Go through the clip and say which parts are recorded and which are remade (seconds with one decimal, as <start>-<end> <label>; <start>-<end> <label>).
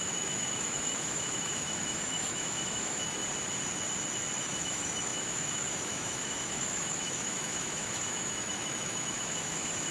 0.0-3.2 remade; 3.2-4.4 recorded; 4.4-9.9 remade